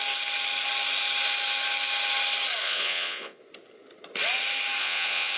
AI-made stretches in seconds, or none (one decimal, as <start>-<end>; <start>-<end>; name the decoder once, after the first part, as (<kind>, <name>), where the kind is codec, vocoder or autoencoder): 2.6-3.4 (vocoder, Vocos); 4.8-5.4